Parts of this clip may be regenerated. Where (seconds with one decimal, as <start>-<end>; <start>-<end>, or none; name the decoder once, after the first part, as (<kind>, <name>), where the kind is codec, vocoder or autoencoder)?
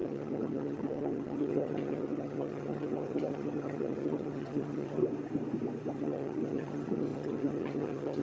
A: 0.0-5.0 (vocoder, HiFi-GAN); 5.9-8.2